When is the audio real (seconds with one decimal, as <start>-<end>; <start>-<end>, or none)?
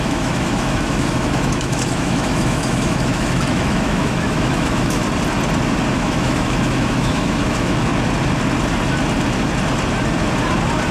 5.0-5.9; 7.9-10.9